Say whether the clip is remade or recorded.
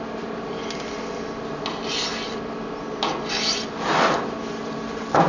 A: recorded